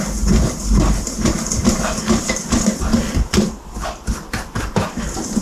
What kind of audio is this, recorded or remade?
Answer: remade